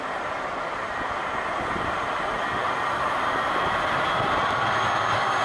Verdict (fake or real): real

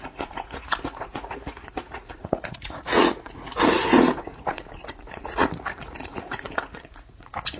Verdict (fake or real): fake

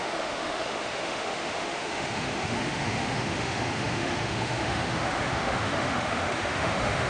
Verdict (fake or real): fake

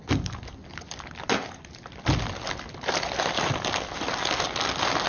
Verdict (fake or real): real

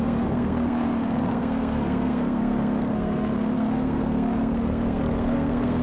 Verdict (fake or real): fake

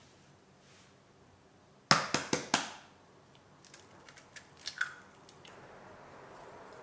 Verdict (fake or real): real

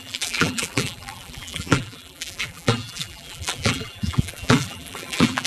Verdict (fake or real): fake